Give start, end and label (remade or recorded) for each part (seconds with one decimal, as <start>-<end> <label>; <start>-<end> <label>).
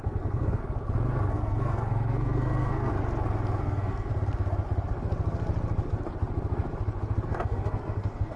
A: 0.0-0.6 remade; 0.6-1.3 recorded; 1.3-2.9 remade; 2.9-3.6 recorded; 3.6-4.1 remade; 4.1-7.3 recorded; 7.3-8.4 remade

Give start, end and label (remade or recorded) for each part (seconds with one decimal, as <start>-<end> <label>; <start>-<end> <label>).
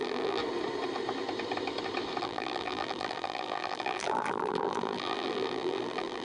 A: 0.0-0.4 remade; 0.4-2.2 recorded; 2.2-6.2 remade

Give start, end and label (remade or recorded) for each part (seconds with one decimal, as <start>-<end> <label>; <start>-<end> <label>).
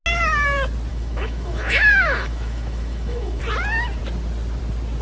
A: 0.0-0.9 recorded; 0.9-3.4 remade; 3.4-5.0 recorded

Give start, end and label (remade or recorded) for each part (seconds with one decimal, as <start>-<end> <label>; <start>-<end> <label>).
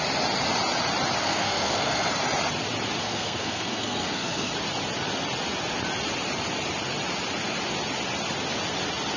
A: 0.0-1.2 recorded; 1.2-2.1 remade; 2.1-3.0 recorded; 3.0-4.5 remade; 4.5-9.2 recorded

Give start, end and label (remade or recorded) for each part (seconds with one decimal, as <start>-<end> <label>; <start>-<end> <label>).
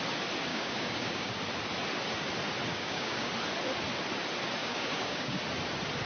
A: 0.0-0.5 recorded; 0.5-1.3 remade; 1.3-2.7 recorded; 2.7-3.3 remade; 3.3-4.6 recorded; 4.6-5.4 remade; 5.4-6.1 recorded